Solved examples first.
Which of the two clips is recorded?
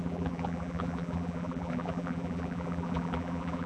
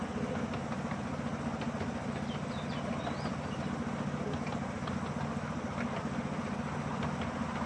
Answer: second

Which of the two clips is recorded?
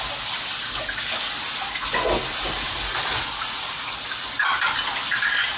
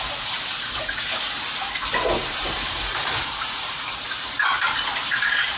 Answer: first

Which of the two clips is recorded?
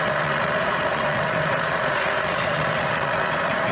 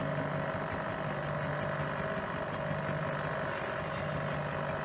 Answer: second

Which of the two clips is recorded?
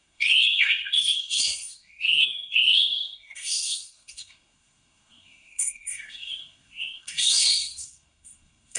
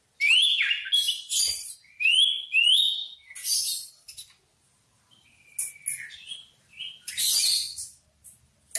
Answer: second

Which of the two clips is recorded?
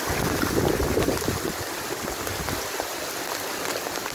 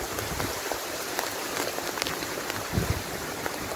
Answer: first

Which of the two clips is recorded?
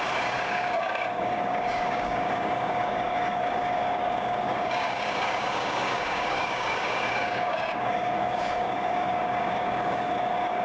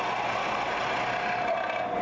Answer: second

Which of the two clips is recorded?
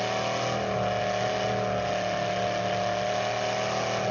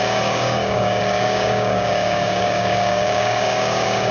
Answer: first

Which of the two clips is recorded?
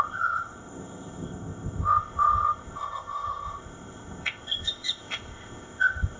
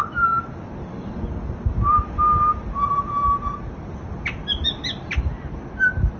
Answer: second